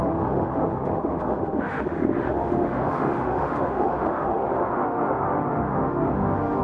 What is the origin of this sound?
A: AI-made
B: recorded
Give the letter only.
A